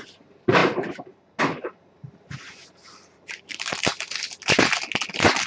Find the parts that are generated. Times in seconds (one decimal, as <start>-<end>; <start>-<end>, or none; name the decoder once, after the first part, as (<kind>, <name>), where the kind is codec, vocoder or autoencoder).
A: 0.0-3.9 (vocoder, BigVGAN v2)